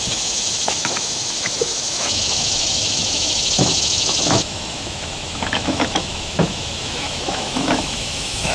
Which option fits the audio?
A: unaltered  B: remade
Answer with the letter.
B